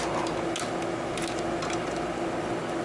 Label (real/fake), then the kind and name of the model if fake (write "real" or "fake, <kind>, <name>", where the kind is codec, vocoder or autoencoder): real